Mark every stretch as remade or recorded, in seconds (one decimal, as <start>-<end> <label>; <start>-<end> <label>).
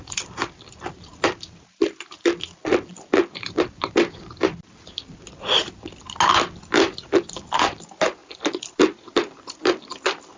0.0-10.4 recorded